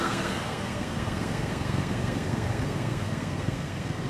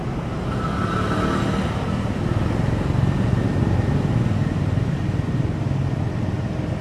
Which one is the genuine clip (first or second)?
second